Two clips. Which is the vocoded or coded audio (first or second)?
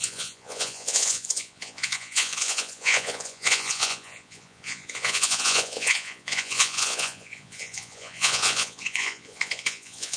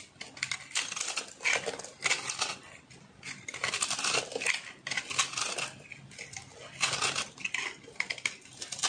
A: first